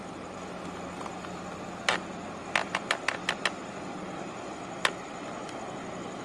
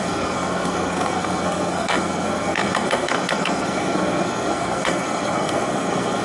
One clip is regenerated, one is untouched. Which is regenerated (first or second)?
second